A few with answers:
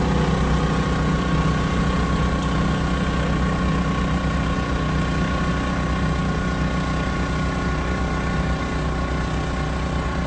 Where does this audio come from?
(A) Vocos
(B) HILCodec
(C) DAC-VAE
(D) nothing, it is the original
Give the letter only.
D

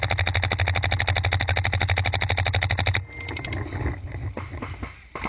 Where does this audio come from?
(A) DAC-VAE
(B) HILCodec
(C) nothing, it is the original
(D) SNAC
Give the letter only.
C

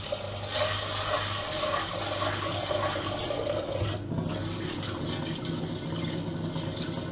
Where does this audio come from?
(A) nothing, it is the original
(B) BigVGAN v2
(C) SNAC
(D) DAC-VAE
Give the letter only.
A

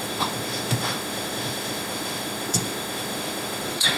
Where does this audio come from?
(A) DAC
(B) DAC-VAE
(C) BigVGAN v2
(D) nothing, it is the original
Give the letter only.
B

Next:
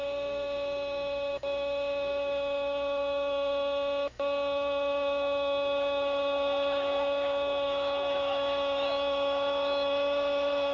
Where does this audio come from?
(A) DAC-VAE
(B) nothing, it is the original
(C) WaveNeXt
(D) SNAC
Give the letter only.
A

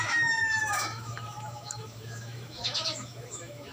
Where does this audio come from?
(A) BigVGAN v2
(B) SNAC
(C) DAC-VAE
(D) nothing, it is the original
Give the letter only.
C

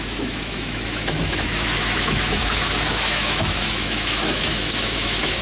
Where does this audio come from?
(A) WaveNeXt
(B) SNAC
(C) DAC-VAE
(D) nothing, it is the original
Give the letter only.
C